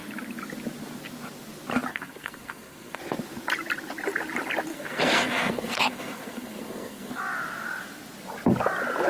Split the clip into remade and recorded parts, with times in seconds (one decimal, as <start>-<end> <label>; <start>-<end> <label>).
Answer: 0.0-1.9 recorded; 1.9-3.0 remade; 3.0-4.7 recorded; 4.7-7.2 remade; 7.2-9.1 recorded